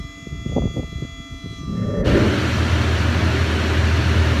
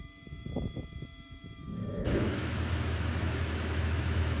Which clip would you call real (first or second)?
first